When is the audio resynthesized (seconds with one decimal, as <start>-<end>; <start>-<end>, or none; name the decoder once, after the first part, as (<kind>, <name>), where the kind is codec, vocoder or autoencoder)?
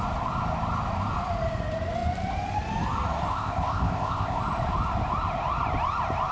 3.3-4.4 (codec, ZipCodec)